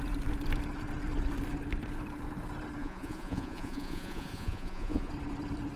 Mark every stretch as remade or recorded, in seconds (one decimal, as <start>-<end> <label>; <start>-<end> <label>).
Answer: 0.0-2.8 recorded; 2.8-5.1 remade; 5.1-5.8 recorded